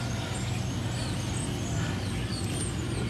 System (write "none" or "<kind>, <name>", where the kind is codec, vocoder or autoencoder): none